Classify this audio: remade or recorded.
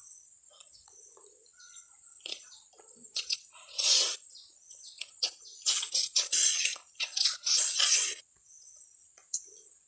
remade